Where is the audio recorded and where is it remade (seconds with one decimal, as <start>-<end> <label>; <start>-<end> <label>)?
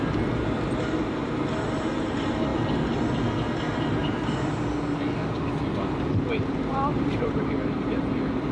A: 0.0-4.0 recorded; 4.0-4.6 remade; 4.6-6.7 recorded; 6.7-8.1 remade; 8.1-8.5 recorded